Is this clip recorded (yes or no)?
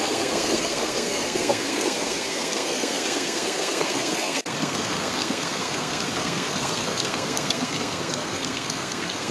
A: no